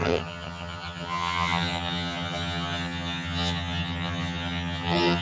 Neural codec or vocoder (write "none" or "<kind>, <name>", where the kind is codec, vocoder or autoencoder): vocoder, HiFi-GAN